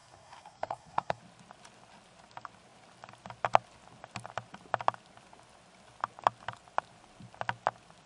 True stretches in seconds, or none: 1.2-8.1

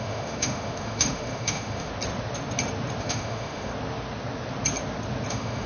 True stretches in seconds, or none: 1.9-3.0; 3.7-5.3

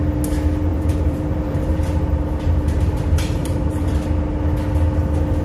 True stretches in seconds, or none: 0.0-0.7; 3.9-5.4

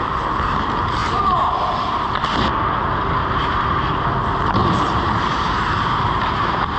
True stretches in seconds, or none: 0.0-4.6; 6.3-6.8

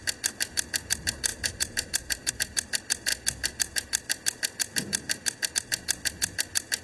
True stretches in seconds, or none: 0.0-1.3; 2.3-6.8

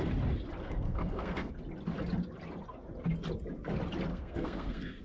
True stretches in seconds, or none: 0.0-0.6; 1.5-4.1

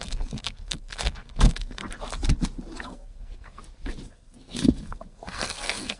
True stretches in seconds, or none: 1.8-2.8; 3.6-4.1